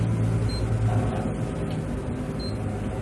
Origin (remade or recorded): recorded